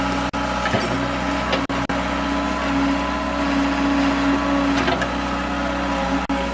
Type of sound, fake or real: real